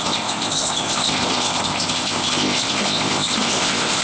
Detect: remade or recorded remade